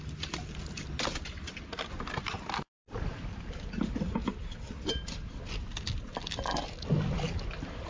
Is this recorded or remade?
recorded